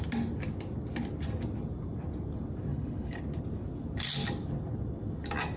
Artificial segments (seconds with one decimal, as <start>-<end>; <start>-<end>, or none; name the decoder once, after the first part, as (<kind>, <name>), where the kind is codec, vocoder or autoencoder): 2.7-3.2 (codec, HILCodec)